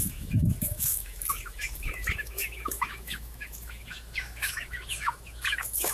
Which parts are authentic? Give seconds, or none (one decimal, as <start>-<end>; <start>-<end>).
none